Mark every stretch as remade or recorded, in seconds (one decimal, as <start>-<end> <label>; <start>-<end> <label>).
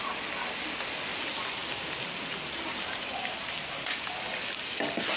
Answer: 0.0-5.2 recorded